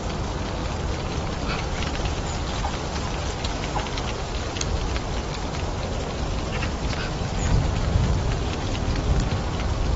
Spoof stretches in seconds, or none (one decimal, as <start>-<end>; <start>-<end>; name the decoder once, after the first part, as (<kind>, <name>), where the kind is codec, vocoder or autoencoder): none